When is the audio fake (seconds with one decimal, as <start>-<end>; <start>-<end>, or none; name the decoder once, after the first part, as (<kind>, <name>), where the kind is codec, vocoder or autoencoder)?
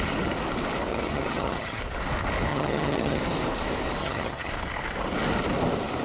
0.9-1.8 (vocoder, HiFi-GAN); 2.5-3.2; 4.0-4.5